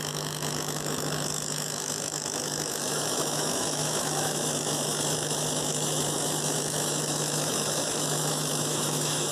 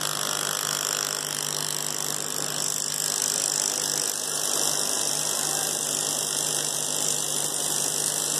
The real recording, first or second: second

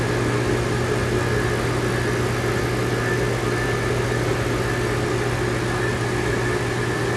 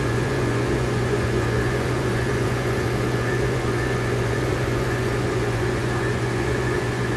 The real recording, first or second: first